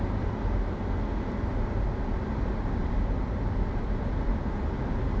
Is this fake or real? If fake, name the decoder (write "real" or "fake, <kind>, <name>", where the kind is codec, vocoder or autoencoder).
real